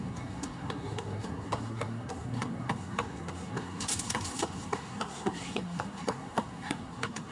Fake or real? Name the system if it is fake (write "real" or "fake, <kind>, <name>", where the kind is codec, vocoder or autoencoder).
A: fake, codec, SNAC